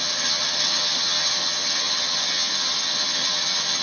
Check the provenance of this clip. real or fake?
fake